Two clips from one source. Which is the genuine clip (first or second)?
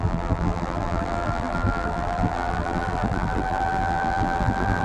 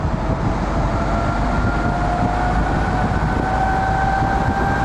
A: second